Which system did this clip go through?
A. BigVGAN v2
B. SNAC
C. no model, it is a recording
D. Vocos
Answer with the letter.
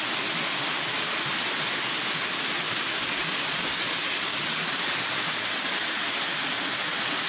C